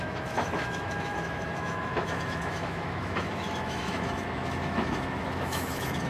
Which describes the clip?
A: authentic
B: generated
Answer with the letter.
B